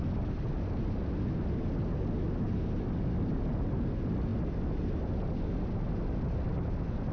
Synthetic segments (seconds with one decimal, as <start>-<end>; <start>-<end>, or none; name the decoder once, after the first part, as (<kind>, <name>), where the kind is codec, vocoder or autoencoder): none